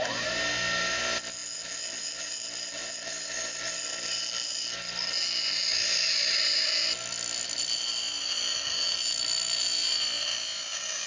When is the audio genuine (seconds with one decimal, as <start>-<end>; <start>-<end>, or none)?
0.0-11.1